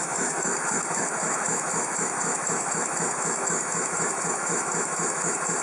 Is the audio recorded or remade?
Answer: remade